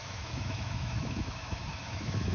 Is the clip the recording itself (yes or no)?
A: no